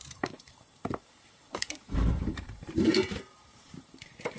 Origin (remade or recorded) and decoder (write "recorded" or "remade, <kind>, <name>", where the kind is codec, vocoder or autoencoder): remade, vocoder, BigVGAN v2